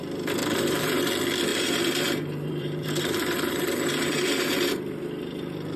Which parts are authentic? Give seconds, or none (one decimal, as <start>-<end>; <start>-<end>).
0.0-0.4; 1.1-1.5; 5.0-5.8